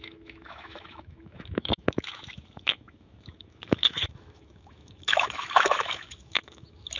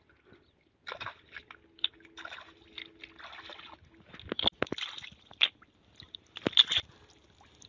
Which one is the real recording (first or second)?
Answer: second